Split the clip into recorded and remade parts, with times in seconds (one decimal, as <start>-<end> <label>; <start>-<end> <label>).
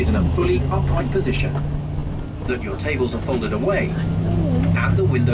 0.0-5.3 recorded